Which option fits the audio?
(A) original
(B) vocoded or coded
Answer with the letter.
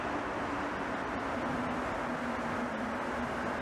A